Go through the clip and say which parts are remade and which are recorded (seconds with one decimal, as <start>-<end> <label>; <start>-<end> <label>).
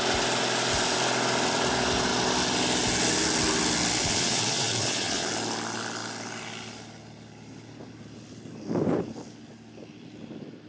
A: 0.0-4.0 recorded; 4.0-5.3 remade; 5.3-10.7 recorded